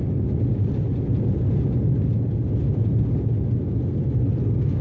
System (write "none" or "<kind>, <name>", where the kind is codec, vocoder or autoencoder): none